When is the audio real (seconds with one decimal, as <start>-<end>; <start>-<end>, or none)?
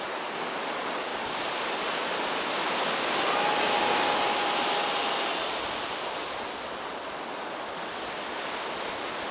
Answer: 0.0-9.3